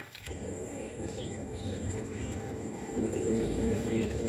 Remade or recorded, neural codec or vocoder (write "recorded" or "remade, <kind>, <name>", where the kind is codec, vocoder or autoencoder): remade, codec, DAC